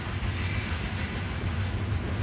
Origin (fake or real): real